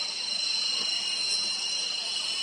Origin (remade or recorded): recorded